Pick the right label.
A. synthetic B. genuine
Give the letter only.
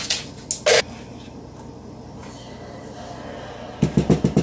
B